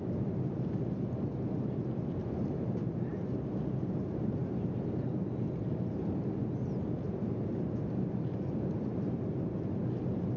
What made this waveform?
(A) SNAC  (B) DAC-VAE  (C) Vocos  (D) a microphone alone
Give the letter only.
D